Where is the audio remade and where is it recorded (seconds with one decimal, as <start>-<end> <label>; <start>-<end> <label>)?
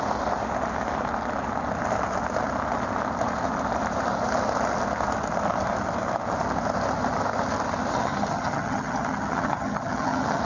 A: 0.0-7.9 recorded; 7.9-10.4 remade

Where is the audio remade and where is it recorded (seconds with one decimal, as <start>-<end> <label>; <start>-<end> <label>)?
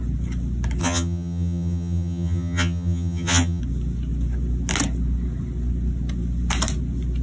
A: 0.0-0.8 recorded; 0.8-3.6 remade; 3.6-7.2 recorded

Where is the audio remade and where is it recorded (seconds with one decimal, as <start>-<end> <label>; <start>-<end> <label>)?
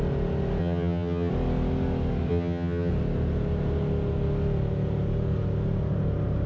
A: 0.0-0.6 recorded; 0.6-1.3 remade; 1.3-2.3 recorded; 2.3-2.9 remade; 2.9-6.5 recorded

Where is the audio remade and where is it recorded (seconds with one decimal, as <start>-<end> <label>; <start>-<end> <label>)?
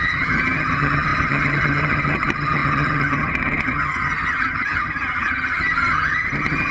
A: 0.0-6.7 remade